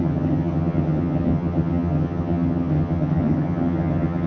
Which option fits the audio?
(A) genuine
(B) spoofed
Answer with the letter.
B